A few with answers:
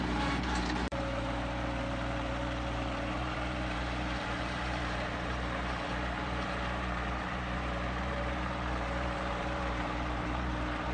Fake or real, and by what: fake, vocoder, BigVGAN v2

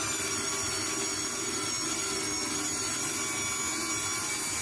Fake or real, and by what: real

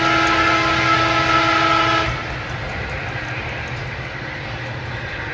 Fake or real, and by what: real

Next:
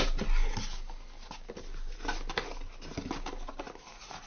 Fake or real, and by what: real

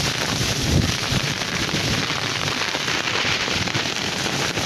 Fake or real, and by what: fake, vocoder, BigVGAN v2